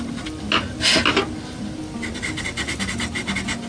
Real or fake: real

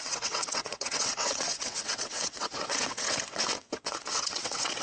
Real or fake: fake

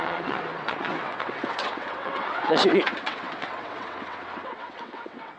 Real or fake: fake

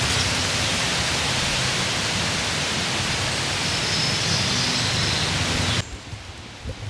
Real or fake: real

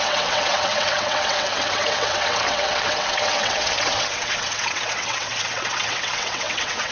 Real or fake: fake